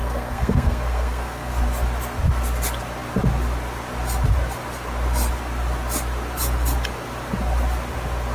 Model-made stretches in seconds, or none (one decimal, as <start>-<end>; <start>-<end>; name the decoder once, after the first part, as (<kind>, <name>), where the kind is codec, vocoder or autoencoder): 0.0-1.5 (codec, SNAC)